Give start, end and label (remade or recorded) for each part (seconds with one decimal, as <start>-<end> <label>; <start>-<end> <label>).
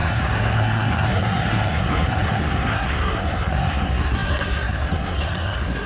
0.0-5.9 remade